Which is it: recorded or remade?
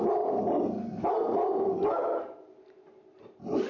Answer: recorded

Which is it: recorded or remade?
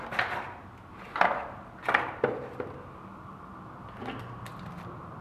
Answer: recorded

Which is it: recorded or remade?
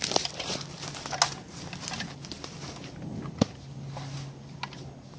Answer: recorded